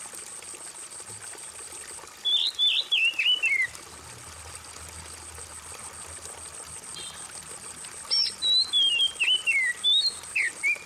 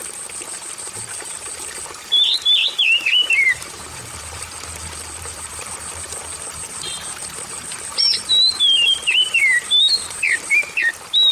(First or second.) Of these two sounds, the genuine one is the first